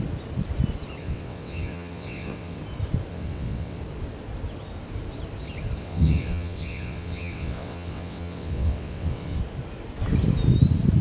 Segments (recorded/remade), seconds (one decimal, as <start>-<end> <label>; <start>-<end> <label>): 0.0-1.0 recorded; 1.0-2.6 remade; 2.6-3.1 recorded; 3.1-3.8 remade; 3.8-5.8 recorded; 5.8-9.4 remade; 9.4-11.0 recorded